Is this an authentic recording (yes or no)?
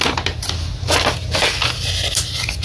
yes